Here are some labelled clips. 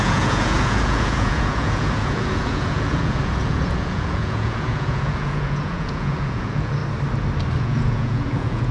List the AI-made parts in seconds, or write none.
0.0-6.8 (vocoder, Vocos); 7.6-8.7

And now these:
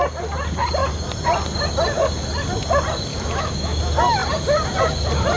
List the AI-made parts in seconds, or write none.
3.1-3.8 (autoencoder, DAC-VAE)

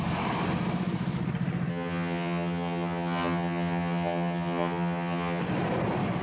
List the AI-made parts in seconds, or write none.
1.7-5.4 (vocoder, HiFi-GAN)

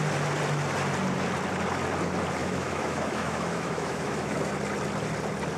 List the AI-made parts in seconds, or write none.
2.4-4.5 (autoencoder, DAC-VAE)

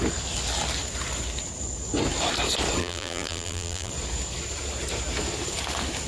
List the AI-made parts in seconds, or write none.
2.8-3.9 (vocoder, BigVGAN v2)

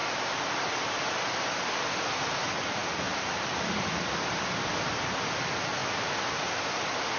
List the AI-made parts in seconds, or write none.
none

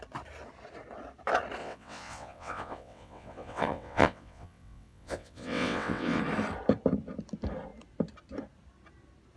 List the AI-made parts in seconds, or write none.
1.6-6.2 (vocoder, WaveNeXt)

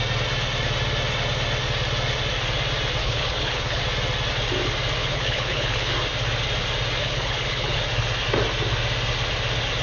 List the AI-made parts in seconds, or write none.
3.0-3.8 (codec, HILCodec); 5.0-5.9; 7.0-7.8